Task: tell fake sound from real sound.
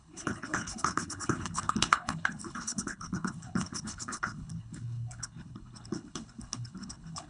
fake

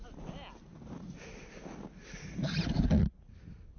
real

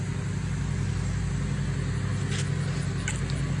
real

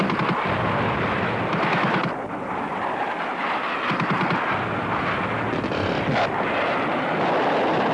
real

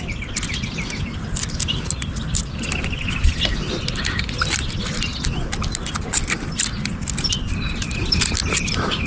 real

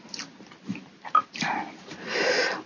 real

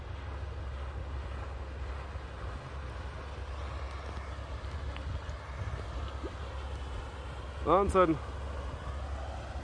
real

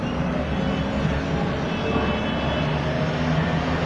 real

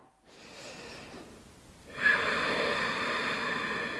real